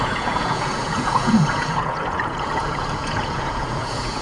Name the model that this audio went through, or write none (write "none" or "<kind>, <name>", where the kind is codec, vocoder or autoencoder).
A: vocoder, Vocos